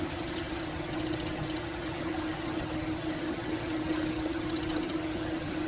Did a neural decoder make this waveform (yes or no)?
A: yes